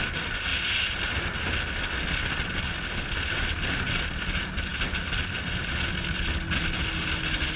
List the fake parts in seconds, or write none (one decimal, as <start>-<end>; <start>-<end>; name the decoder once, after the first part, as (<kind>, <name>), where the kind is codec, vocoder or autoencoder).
none